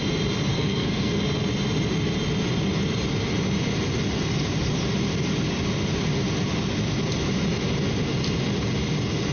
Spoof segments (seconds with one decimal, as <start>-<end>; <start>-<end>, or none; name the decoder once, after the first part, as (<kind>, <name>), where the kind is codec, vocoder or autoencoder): 0.5-1.2 (codec, SNAC)